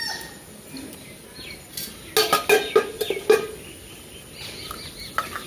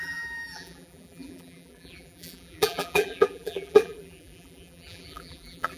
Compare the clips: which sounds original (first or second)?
first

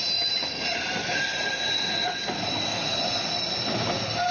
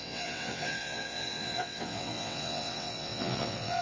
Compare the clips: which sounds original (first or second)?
first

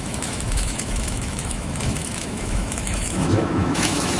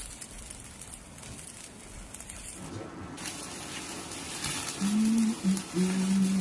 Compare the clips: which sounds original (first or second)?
second